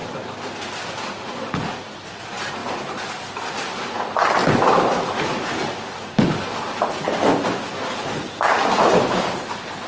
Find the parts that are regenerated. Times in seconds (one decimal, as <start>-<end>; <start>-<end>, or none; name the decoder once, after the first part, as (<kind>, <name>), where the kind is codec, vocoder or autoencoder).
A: 0.0-1.5 (vocoder, BigVGAN v2)